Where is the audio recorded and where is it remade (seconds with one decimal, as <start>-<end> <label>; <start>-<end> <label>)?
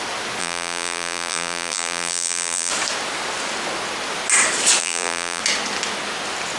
0.0-0.4 recorded; 0.4-2.7 remade; 2.7-4.8 recorded; 4.8-5.4 remade; 5.4-6.6 recorded